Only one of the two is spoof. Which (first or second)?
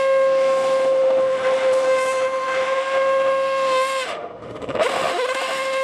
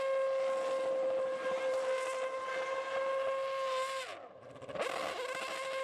first